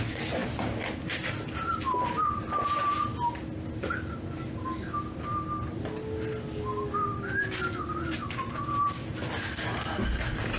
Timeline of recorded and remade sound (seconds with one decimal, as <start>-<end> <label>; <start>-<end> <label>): 0.0-10.6 recorded